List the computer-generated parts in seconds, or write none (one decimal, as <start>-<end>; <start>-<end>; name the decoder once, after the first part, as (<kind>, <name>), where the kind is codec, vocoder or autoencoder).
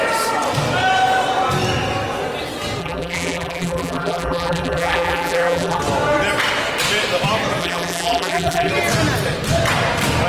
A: 2.8-5.8 (vocoder, BigVGAN v2); 7.6-8.7